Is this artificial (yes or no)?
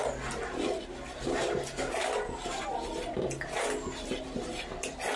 no